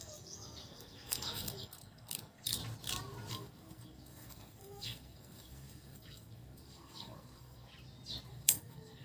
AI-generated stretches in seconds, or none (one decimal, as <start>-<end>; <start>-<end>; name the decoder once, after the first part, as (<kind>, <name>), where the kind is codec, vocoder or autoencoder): 0.0-2.6 (codec, SNAC); 3.3-7.7; 8.3-9.0